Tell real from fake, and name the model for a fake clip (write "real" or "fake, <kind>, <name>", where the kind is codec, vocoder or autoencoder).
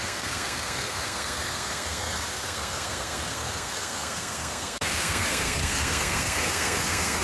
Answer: fake, codec, SNAC